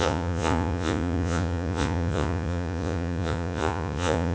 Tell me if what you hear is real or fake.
fake